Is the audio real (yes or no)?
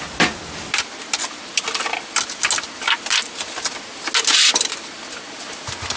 yes